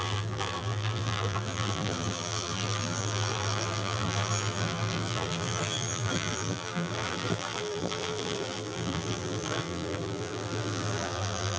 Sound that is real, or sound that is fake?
fake